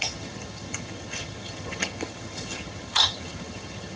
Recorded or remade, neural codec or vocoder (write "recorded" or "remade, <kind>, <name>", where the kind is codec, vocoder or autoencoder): remade, vocoder, HiFi-GAN